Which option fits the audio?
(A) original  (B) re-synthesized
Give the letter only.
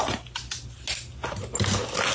A